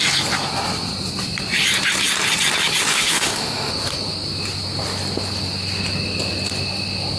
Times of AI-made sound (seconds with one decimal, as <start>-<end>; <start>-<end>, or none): 2.9-3.7